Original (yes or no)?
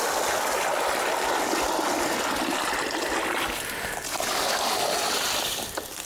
yes